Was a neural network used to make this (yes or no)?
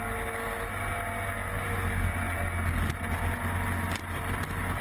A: no